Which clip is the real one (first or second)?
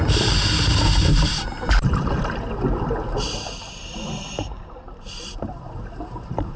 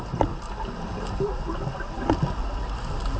second